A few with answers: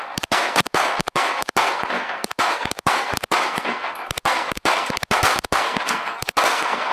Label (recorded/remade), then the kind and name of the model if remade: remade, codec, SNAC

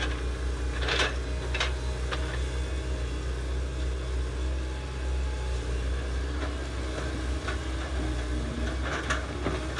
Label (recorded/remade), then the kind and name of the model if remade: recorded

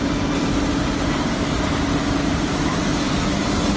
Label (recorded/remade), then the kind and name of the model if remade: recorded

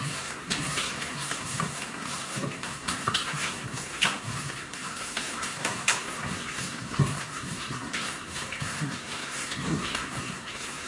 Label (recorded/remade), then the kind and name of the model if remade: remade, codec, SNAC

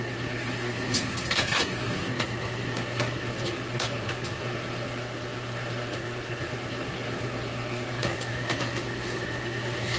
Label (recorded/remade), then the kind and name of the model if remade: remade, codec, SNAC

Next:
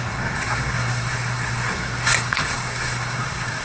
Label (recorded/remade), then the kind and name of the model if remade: remade, codec, SNAC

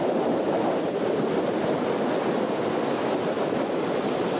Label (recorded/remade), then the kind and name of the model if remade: recorded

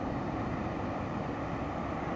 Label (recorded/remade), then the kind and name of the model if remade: recorded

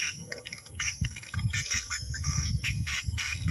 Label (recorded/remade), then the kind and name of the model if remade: remade, codec, SNAC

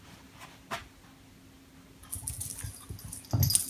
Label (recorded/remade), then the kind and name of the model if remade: recorded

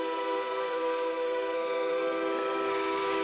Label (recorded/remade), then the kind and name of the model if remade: remade, codec, SNAC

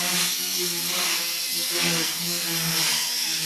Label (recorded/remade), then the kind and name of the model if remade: remade, codec, SNAC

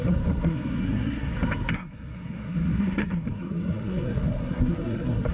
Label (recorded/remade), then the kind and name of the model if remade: remade, codec, SNAC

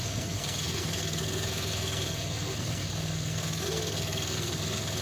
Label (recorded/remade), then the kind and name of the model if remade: remade, codec, SNAC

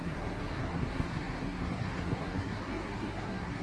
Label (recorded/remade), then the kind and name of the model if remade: remade, codec, SNAC